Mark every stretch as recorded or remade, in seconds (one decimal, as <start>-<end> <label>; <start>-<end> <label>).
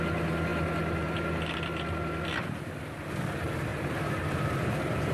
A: 0.0-3.7 recorded; 3.7-5.1 remade